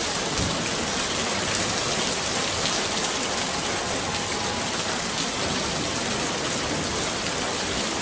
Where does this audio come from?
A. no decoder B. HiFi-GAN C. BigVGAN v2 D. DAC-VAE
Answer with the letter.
A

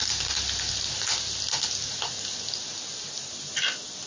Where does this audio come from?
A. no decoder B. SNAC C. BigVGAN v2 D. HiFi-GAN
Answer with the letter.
A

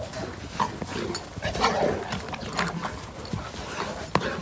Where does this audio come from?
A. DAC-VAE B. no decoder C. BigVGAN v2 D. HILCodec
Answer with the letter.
B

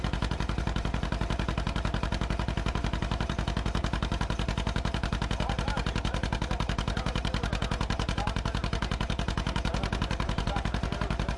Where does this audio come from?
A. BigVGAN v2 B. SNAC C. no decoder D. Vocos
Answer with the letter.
A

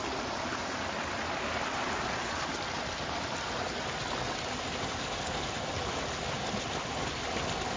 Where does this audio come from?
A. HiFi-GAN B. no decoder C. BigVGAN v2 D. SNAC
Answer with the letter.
B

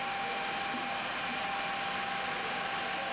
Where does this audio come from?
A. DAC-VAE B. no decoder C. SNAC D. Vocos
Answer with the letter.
B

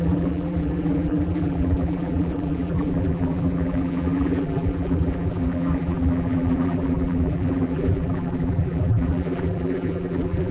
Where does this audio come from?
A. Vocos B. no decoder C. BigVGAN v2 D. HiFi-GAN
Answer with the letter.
C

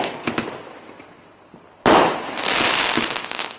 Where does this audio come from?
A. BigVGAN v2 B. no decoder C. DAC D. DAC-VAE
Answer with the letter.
B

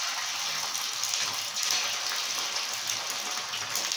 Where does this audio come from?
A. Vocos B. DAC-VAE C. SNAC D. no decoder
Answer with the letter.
D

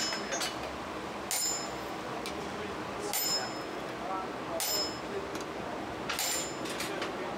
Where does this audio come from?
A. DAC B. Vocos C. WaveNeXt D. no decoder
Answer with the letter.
D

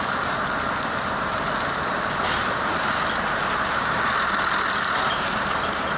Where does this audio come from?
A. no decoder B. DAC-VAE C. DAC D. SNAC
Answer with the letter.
A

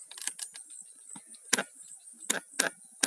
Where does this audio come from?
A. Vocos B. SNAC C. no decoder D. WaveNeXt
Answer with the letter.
C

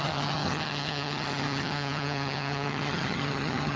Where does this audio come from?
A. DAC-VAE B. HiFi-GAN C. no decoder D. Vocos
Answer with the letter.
B